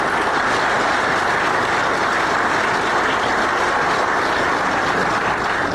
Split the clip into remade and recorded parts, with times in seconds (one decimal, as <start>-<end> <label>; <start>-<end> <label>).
0.0-5.7 recorded